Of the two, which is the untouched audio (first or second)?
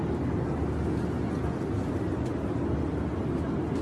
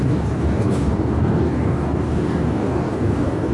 first